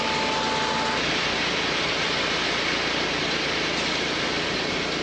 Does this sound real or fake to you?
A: real